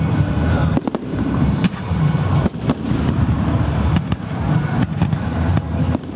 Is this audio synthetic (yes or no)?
yes